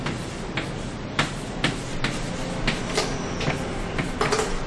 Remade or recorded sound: recorded